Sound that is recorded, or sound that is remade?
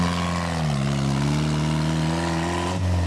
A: recorded